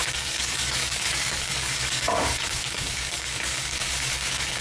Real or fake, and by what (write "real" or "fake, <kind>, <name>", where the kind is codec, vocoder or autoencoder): fake, codec, DAC